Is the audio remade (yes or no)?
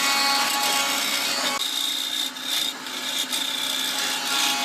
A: no